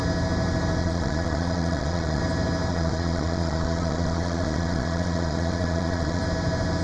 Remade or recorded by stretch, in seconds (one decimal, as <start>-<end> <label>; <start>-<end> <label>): 0.0-0.8 recorded; 0.8-2.2 remade; 2.2-2.7 recorded; 2.7-6.2 remade; 6.2-6.8 recorded